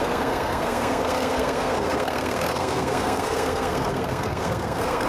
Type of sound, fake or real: fake